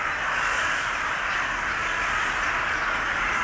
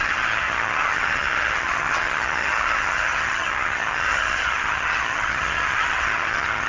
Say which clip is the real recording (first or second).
first